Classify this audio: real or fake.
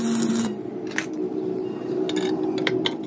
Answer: real